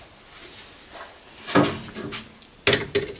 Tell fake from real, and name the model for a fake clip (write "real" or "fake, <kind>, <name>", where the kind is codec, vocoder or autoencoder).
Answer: real